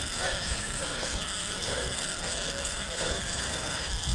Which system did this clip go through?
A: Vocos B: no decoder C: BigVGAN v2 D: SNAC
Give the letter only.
D